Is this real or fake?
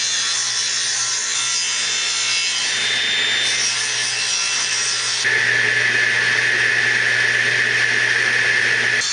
real